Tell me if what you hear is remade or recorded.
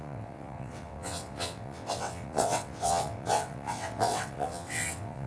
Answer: remade